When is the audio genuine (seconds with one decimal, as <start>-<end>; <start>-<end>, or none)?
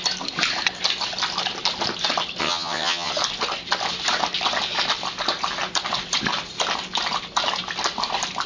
0.0-2.4; 3.1-8.5